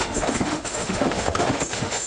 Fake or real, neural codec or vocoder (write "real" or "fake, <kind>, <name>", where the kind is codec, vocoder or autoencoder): fake, autoencoder, DAC-VAE